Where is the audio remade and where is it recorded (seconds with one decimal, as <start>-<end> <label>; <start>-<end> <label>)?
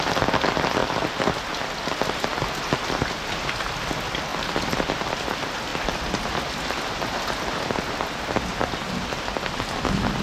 0.0-4.3 recorded; 4.3-5.3 remade; 5.3-10.2 recorded